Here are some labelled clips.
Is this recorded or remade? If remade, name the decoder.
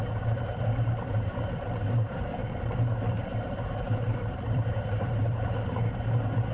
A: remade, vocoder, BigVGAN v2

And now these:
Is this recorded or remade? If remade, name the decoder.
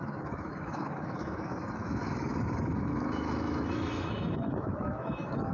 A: remade, autoencoder, DAC-VAE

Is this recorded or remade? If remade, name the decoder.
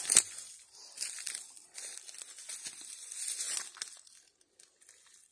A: recorded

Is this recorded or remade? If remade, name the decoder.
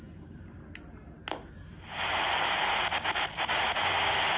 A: recorded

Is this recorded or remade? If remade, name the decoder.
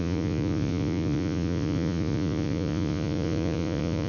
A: remade, vocoder, Vocos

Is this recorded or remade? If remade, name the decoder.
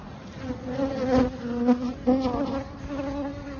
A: recorded